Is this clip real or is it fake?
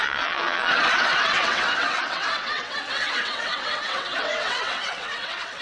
fake